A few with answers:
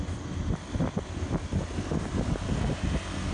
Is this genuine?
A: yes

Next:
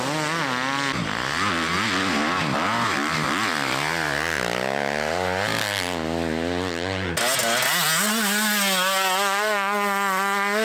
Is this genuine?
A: yes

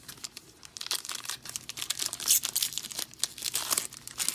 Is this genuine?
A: yes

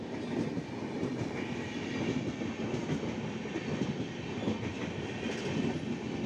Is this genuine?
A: yes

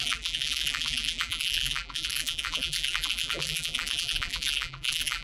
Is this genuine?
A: no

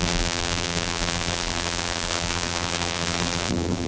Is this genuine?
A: no